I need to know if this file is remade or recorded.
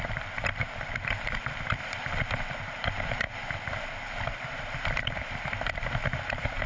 remade